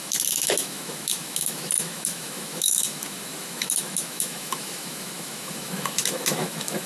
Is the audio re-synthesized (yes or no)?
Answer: yes